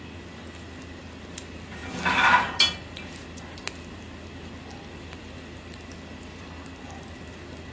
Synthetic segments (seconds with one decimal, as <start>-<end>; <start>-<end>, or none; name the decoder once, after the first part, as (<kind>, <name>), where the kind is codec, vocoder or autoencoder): none